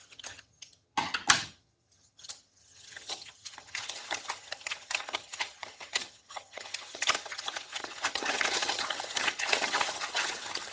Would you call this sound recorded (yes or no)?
no